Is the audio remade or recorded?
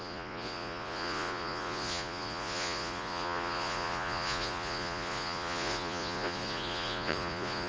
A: remade